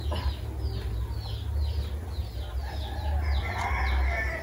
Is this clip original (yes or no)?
yes